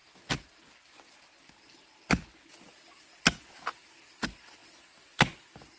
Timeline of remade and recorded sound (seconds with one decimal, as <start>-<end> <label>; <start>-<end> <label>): 0.0-5.8 recorded